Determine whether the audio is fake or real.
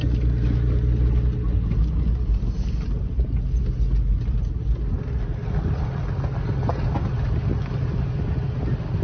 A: real